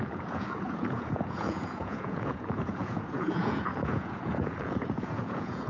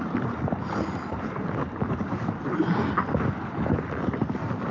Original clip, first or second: second